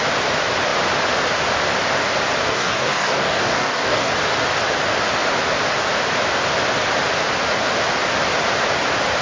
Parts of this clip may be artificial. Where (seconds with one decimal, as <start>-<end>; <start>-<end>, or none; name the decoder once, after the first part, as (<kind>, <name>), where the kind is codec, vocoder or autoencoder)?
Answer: 2.5-4.1 (codec, DAC)